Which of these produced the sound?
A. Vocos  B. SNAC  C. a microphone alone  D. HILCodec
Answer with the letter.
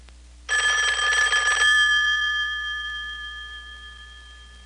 C